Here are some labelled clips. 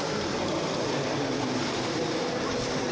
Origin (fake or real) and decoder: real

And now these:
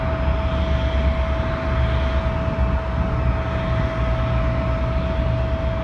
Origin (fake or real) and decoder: real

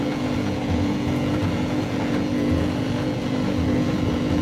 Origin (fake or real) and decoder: fake, vocoder, Vocos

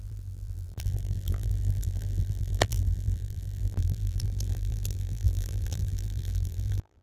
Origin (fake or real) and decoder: fake, vocoder, BigVGAN v2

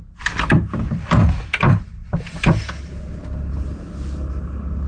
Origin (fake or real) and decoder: real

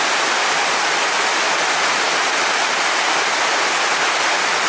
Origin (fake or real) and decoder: real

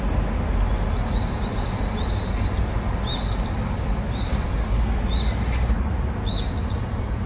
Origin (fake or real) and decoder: real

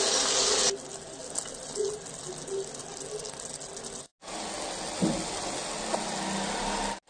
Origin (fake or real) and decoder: real